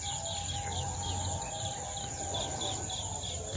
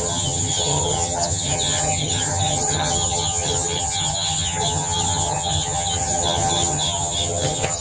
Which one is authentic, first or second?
first